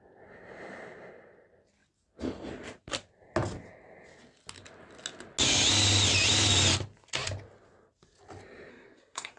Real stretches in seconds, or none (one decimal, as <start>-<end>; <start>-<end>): 0.0-8.7